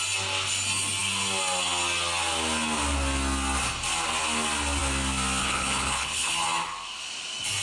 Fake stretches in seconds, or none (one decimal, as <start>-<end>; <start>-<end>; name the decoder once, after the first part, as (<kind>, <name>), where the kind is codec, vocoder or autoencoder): 5.4-6.3 (codec, HILCodec)